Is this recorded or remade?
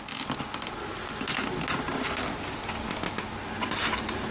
recorded